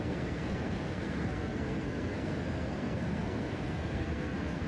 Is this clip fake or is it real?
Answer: fake